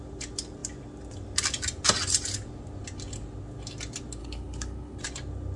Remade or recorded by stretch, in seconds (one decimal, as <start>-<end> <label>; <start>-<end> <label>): 0.0-4.2 recorded; 4.2-5.0 remade; 5.0-5.6 recorded